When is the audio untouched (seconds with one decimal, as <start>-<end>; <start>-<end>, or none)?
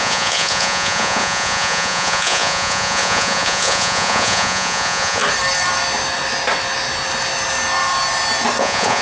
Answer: 5.2-8.6